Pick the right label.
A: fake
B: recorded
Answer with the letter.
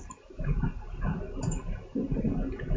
B